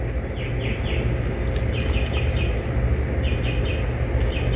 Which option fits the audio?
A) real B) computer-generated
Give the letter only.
A